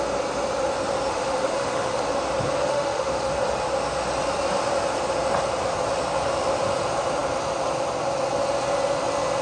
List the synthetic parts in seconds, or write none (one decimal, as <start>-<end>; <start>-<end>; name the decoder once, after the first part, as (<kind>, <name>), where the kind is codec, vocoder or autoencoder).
1.1-2.0 (autoencoder, DAC-VAE); 2.7-3.3